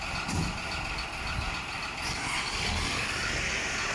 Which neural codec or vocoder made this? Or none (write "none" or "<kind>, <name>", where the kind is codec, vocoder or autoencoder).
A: none